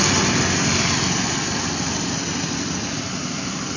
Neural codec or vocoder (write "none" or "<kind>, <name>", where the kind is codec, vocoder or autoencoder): none